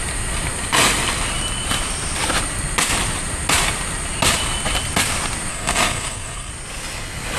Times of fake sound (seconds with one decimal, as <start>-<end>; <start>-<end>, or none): 5.5-6.5